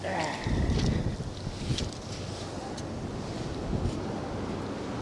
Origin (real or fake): real